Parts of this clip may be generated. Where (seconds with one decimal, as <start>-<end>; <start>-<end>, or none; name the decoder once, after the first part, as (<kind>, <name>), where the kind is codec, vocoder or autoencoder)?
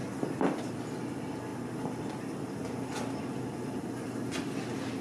none